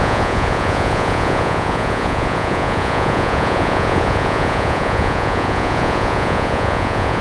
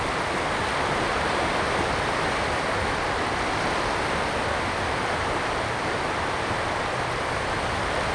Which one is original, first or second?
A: second